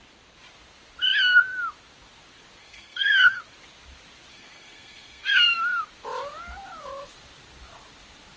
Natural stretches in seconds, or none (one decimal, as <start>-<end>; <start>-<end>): 0.0-2.6; 3.4-4.3; 5.8-8.4